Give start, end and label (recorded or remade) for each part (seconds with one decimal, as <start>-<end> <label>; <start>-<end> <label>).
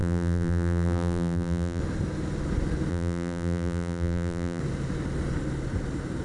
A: 0.0-1.8 remade; 1.8-2.9 recorded; 2.9-4.6 remade; 4.6-6.2 recorded